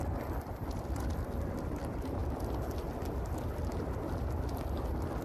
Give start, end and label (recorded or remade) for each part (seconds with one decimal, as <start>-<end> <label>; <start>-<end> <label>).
0.0-5.2 recorded